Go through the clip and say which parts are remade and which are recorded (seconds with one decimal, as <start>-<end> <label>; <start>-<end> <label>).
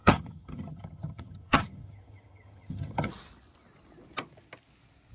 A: 0.0-3.1 remade; 3.1-5.1 recorded